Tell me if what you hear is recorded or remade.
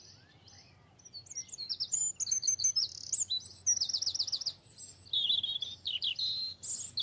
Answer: recorded